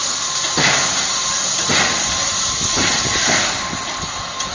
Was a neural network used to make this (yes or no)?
no